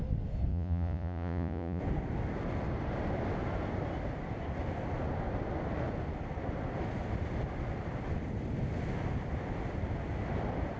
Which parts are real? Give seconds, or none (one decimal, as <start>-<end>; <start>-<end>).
0.0-0.5; 1.8-10.8